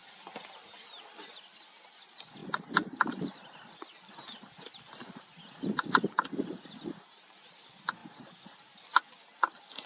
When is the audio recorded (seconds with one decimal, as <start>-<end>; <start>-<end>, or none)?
0.0-9.9